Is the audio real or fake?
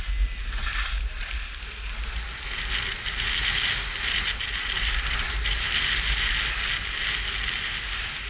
real